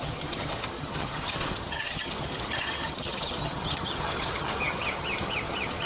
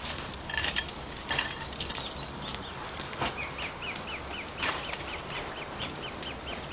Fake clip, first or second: first